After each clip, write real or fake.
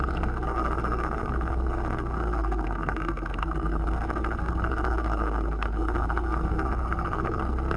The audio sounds fake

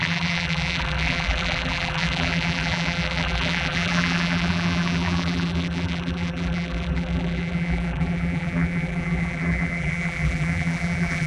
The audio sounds fake